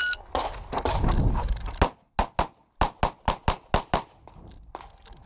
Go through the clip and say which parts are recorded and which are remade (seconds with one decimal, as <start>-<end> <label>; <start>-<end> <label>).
0.0-5.3 recorded